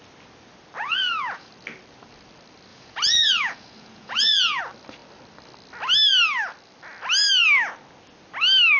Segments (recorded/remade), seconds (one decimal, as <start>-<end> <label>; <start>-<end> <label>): 0.0-0.8 recorded; 0.8-1.5 remade; 1.5-2.7 recorded; 2.7-4.6 remade; 4.6-8.8 recorded